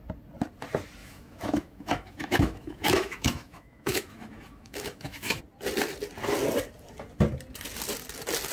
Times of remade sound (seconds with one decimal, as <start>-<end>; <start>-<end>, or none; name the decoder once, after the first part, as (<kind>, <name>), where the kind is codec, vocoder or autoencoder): 1.0-5.4 (autoencoder, DAC-VAE)